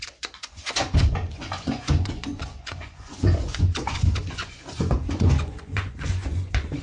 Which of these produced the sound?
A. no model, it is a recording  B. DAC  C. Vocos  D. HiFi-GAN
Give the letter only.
C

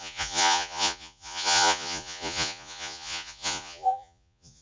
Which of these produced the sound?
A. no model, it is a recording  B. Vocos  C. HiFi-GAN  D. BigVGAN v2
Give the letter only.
B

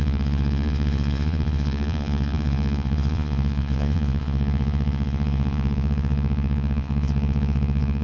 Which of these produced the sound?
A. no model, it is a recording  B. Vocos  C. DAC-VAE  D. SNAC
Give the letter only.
B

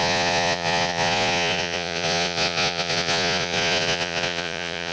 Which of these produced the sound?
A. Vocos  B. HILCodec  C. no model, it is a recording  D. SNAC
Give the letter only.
A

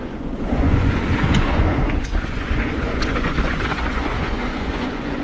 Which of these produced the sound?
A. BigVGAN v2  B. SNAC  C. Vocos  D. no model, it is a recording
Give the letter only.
C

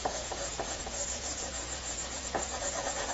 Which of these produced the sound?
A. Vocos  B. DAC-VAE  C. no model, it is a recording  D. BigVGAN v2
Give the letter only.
A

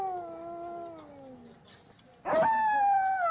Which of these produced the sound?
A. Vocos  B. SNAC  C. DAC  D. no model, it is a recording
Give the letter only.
D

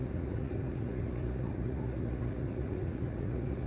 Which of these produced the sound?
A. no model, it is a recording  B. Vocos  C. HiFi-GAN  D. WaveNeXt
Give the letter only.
B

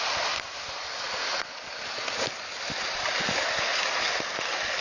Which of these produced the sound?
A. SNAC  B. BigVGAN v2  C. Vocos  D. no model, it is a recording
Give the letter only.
D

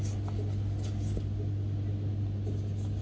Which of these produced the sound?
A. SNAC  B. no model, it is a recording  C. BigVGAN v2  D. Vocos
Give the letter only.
B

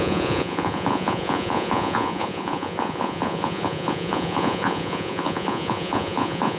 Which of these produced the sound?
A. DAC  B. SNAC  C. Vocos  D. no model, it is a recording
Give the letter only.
C